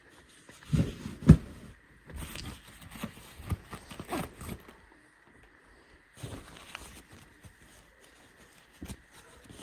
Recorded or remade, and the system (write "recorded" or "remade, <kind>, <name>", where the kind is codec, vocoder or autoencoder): recorded